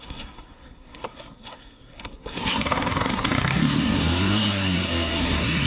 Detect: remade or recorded remade